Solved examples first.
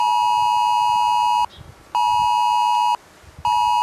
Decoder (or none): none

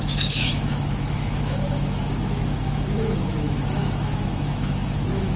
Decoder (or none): autoencoder, DAC-VAE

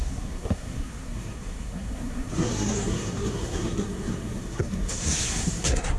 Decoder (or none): codec, SNAC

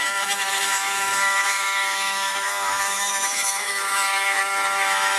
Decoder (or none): autoencoder, DAC-VAE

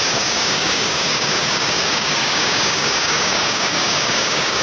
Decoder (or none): codec, DAC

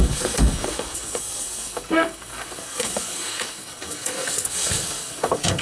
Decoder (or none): codec, SNAC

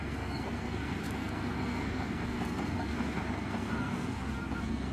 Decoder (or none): codec, SNAC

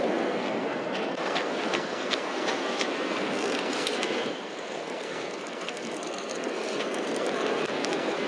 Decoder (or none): codec, SNAC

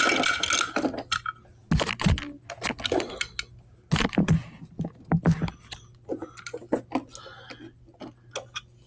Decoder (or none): none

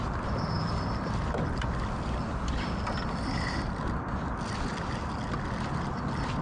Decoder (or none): none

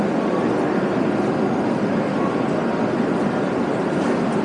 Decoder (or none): none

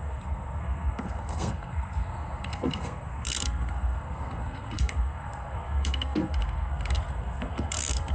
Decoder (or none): codec, SNAC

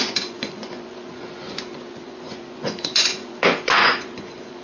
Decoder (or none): vocoder, Vocos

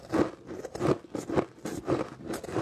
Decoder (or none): none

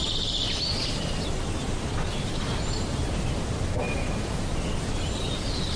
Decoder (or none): none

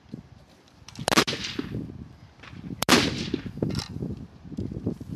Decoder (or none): none